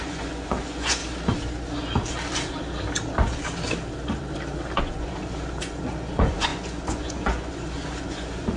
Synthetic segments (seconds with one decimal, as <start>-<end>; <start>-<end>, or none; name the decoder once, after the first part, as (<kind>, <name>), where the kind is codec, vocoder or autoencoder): 0.0-1.0 (vocoder, Vocos); 4.8-8.6